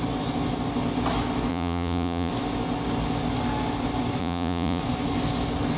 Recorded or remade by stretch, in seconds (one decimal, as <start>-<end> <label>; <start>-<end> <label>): 0.0-1.5 recorded; 1.5-2.3 remade; 2.3-4.2 recorded; 4.2-4.8 remade; 4.8-5.8 recorded